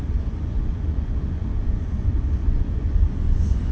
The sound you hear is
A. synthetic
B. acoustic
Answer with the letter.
A